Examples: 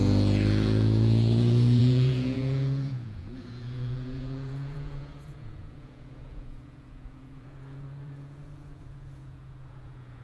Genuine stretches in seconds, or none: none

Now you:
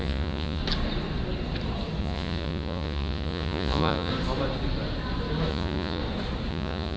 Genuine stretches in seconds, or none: 0.6-2.0; 4.1-5.5; 6.0-6.5

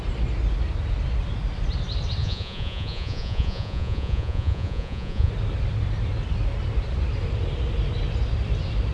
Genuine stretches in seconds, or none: 0.0-2.2; 5.3-8.9